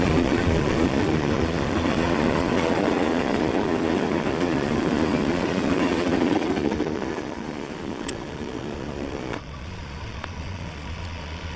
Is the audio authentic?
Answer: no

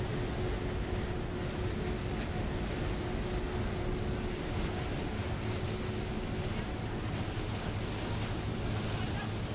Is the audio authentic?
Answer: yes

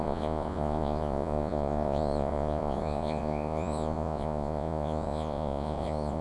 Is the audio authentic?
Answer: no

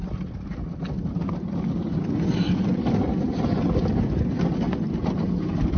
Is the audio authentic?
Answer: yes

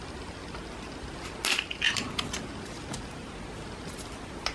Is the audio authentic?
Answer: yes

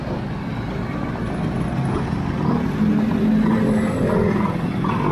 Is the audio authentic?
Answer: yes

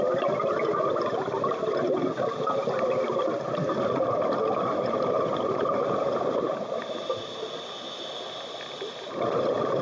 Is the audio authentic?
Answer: yes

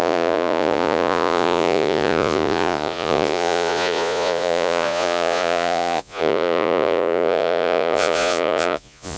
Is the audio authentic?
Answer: no